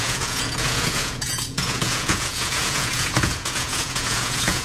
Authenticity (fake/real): fake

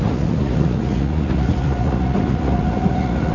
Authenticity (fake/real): fake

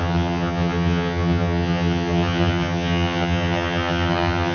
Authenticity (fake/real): fake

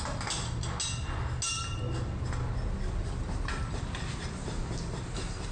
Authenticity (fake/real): real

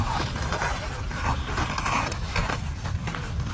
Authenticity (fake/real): real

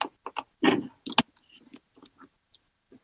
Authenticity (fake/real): real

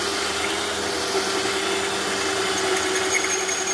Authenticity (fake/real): real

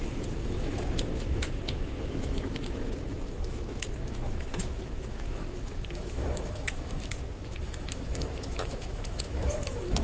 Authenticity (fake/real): fake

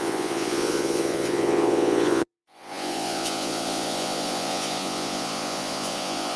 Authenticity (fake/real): fake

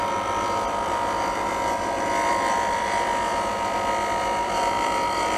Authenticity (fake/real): fake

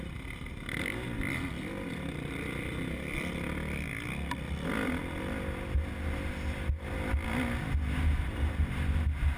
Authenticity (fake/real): real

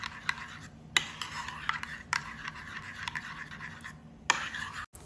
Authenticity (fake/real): real